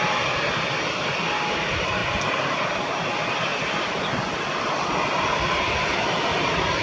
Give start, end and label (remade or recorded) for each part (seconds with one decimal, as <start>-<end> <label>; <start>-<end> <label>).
0.0-6.8 recorded